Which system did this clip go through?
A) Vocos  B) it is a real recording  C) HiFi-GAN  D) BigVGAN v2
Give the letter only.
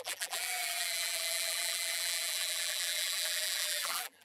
D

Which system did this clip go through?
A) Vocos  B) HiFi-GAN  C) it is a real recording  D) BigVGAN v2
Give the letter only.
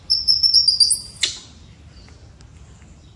C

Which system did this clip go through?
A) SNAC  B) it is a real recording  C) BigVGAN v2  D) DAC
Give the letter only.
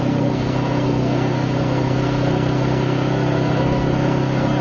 A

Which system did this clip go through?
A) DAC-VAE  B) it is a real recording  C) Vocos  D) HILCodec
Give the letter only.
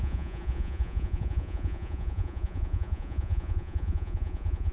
C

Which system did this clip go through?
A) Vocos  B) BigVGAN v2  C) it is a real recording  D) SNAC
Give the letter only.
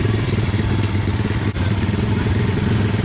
C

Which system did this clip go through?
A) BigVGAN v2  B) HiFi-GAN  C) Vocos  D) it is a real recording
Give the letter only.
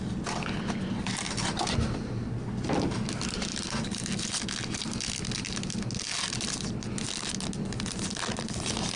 D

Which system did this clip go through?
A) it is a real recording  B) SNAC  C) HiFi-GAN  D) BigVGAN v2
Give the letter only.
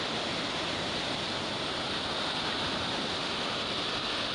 D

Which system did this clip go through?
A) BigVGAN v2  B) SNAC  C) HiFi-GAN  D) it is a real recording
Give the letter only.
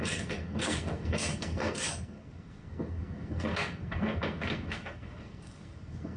B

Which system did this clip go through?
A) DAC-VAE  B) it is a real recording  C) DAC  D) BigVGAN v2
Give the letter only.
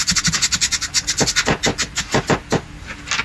B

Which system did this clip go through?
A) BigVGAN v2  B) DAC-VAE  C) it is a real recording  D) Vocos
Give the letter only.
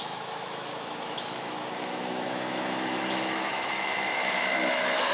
B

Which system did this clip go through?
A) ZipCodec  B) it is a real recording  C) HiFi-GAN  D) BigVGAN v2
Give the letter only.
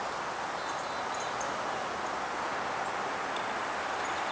B